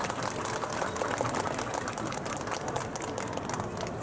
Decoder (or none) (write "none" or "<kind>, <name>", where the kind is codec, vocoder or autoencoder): none